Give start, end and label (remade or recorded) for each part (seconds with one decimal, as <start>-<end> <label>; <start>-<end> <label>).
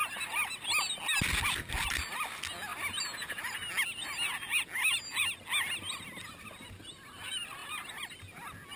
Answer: 0.0-8.8 recorded